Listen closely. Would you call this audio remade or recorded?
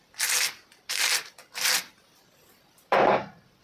recorded